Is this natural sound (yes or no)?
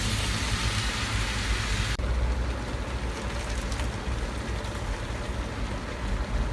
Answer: yes